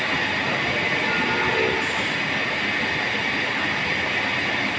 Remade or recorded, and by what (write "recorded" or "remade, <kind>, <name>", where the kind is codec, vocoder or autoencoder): recorded